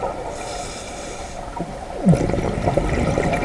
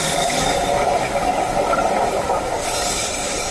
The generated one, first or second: second